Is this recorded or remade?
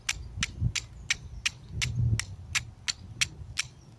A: recorded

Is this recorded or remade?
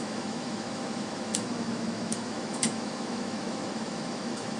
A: remade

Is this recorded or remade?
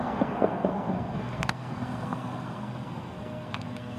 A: remade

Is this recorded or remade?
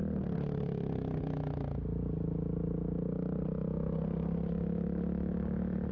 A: recorded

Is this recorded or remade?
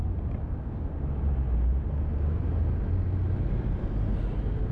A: recorded